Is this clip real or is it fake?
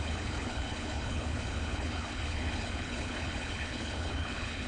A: fake